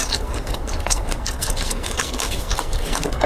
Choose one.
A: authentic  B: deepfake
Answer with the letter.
B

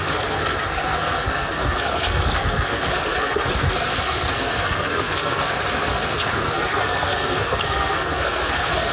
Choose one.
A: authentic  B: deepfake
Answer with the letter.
B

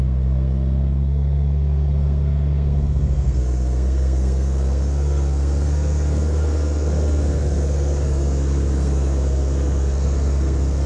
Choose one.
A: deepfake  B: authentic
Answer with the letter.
A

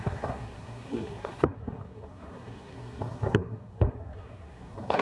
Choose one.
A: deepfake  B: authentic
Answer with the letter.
A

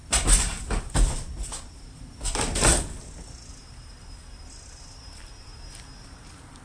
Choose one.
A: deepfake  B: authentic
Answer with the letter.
B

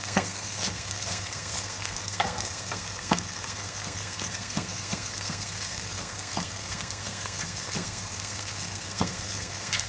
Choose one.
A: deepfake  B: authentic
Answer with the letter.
A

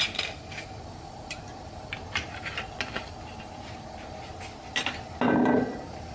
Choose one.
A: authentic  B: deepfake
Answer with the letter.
A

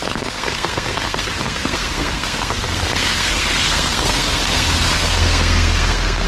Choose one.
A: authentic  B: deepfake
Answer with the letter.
B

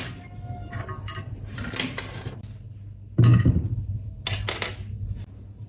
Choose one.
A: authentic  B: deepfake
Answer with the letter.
A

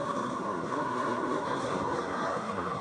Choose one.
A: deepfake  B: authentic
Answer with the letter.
A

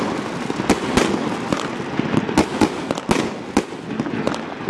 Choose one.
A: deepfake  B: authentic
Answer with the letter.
B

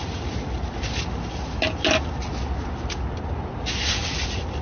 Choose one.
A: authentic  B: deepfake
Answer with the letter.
A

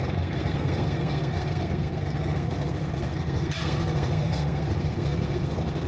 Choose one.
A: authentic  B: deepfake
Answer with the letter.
B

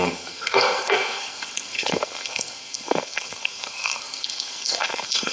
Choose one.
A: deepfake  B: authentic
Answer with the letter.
A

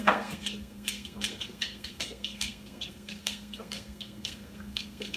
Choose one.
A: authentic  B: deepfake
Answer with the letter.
B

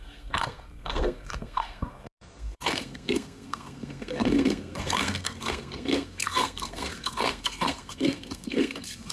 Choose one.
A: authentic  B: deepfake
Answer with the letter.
B